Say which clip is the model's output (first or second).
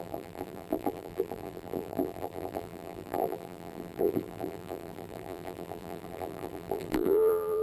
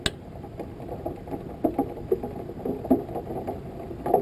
first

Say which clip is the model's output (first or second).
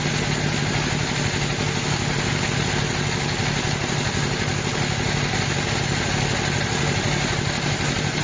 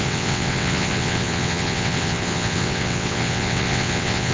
second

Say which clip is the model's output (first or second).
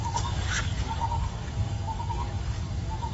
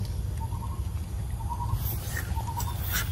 first